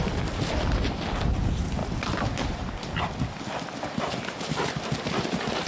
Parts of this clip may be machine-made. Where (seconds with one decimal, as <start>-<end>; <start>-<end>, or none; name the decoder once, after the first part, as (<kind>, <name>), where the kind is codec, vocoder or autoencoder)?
none